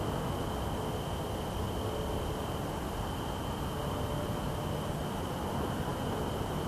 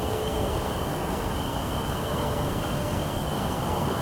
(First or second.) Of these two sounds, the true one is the first